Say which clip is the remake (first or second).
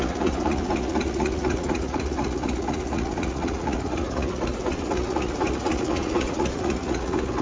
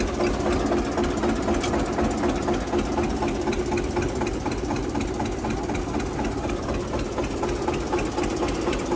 first